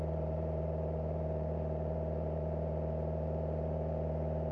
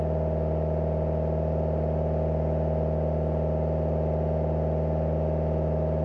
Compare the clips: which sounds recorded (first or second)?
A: second